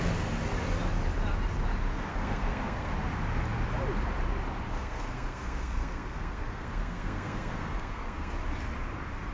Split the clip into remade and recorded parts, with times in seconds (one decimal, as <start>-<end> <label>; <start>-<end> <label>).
0.0-2.1 recorded; 2.1-2.9 remade; 2.9-4.7 recorded; 4.7-8.3 remade; 8.3-9.3 recorded

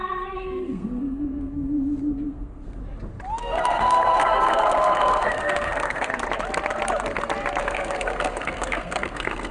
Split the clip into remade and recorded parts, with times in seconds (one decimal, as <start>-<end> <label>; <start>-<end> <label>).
0.0-2.8 remade; 2.8-3.4 recorded; 3.4-6.1 remade; 6.1-7.6 recorded; 7.6-9.5 remade

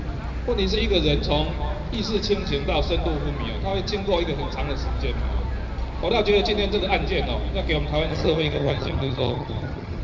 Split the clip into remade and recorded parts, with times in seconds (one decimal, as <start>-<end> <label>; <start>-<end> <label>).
0.0-8.1 recorded; 8.1-10.0 remade

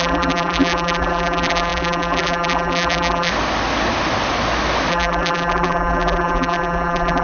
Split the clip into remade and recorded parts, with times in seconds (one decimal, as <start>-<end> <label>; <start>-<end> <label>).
0.0-3.3 remade; 3.3-4.9 recorded; 4.9-7.2 remade

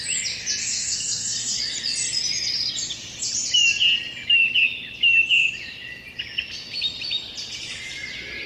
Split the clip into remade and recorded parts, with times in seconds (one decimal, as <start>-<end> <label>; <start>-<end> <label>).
0.0-0.6 recorded; 0.6-1.6 remade; 1.6-8.5 recorded